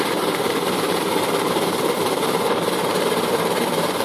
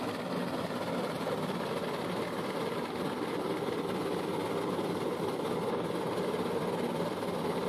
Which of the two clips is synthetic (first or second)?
first